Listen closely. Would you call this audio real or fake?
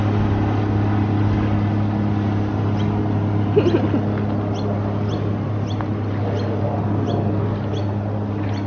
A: real